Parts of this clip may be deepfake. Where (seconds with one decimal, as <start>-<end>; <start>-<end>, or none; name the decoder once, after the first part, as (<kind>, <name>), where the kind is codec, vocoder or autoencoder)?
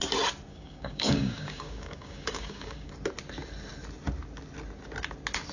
0.5-2.9 (codec, DAC)